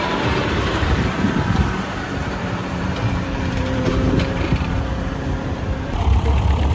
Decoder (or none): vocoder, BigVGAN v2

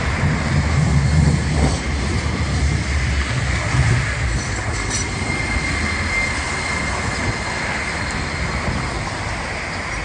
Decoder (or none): none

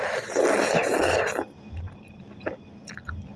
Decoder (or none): none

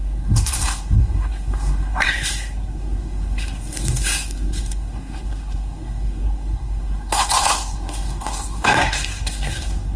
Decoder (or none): codec, SNAC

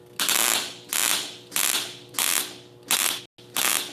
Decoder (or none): none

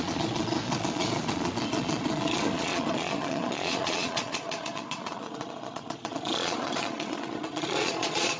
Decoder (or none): vocoder, Vocos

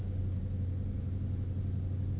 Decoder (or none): none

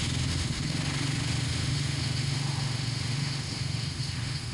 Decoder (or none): autoencoder, DAC-VAE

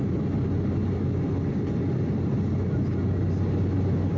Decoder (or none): none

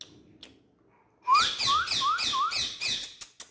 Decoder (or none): none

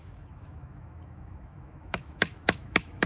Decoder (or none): autoencoder, DAC-VAE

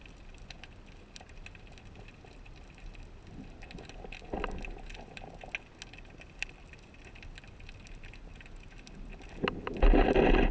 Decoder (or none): none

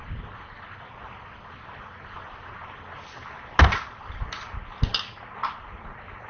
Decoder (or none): none